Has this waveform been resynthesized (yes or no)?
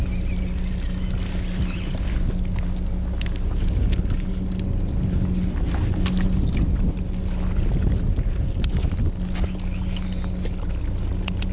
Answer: no